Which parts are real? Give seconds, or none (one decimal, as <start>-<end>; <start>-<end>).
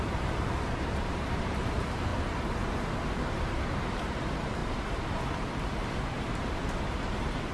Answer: 2.1-3.3; 4.6-5.3